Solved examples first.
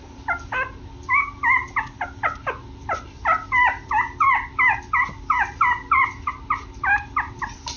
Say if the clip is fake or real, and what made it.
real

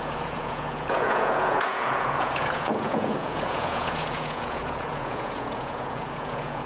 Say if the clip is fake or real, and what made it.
fake, vocoder, Vocos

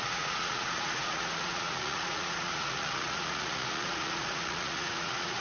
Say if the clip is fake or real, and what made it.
fake, vocoder, Vocos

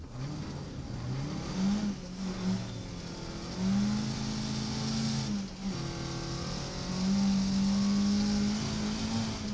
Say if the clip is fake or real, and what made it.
real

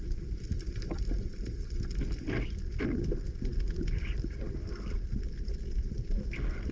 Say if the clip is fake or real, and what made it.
real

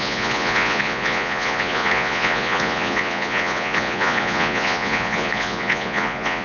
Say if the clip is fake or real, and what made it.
fake, vocoder, Vocos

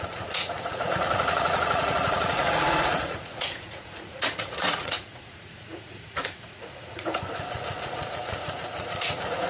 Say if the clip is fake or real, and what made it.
fake, vocoder, Vocos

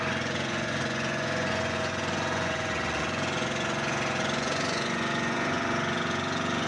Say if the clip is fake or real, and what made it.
fake, vocoder, Vocos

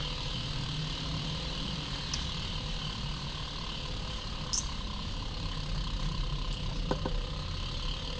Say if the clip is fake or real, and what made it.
real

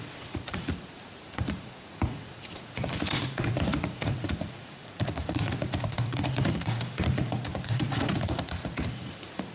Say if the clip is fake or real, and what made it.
fake, vocoder, Vocos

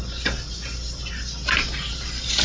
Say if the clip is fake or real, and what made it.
real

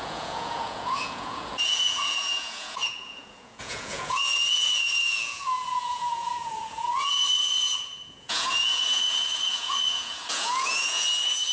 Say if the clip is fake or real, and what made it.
fake, vocoder, Vocos